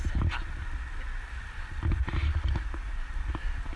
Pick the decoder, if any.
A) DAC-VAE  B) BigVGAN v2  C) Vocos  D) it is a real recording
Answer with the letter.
D